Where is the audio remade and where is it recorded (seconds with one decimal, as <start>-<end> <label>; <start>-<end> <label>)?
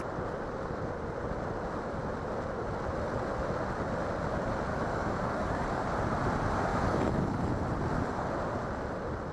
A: 0.0-4.7 recorded; 4.7-5.8 remade; 5.8-6.7 recorded; 6.7-7.5 remade; 7.5-9.3 recorded